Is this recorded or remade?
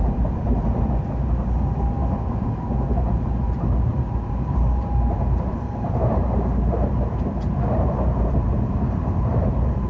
remade